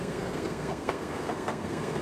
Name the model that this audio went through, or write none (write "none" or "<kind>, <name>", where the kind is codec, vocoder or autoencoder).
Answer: codec, SNAC